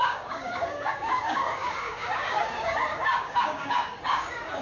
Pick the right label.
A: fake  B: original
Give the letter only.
A